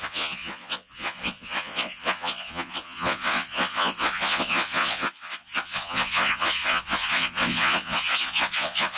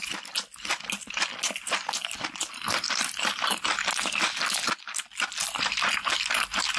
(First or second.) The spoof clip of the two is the first